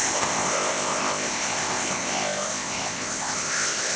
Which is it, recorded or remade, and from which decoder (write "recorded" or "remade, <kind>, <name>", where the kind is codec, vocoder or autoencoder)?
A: remade, codec, ZipCodec